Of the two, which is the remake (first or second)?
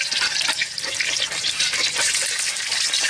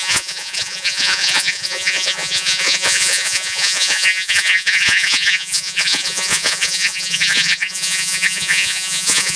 second